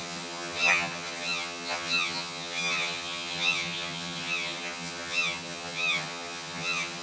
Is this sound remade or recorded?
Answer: remade